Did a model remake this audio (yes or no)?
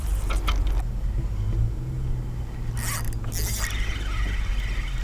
no